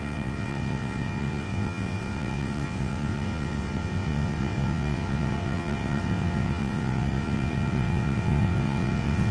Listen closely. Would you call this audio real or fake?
fake